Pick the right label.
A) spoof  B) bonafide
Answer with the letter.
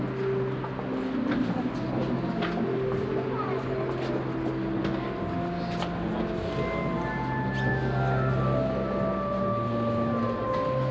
B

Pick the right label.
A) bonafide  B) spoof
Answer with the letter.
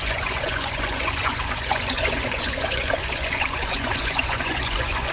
B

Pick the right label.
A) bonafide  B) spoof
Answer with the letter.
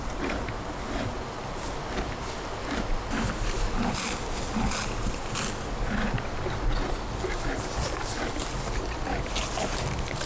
A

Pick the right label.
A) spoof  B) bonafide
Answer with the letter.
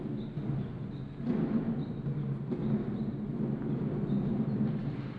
B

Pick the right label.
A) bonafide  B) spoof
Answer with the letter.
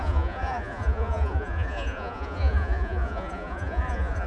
B